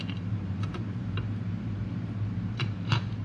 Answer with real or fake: fake